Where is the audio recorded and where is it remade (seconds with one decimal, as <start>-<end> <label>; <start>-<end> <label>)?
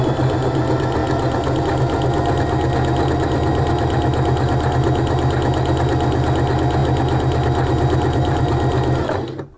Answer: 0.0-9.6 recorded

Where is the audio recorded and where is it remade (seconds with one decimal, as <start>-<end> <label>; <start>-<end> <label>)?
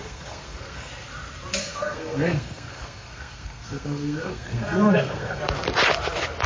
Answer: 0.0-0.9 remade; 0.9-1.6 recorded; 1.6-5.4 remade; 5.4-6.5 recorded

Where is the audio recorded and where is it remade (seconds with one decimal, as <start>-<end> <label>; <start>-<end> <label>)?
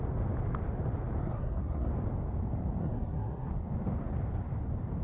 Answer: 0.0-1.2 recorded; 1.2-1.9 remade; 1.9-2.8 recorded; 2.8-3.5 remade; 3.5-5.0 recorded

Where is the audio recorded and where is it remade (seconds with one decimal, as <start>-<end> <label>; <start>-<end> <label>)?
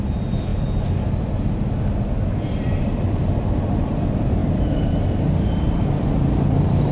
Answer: 0.0-6.9 remade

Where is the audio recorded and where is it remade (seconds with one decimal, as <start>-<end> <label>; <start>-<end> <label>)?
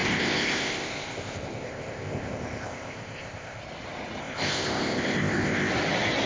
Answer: 0.0-3.6 remade; 3.6-4.2 recorded; 4.2-5.7 remade; 5.7-6.3 recorded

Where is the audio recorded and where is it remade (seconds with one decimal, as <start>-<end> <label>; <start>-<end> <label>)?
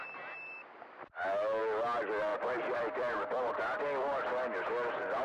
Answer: 0.0-2.3 recorded; 2.3-3.6 remade; 3.6-5.2 recorded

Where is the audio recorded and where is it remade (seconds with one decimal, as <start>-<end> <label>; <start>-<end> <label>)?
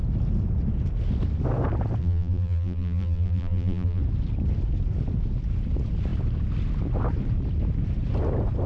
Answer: 0.0-2.0 recorded; 2.0-4.0 remade; 4.0-8.7 recorded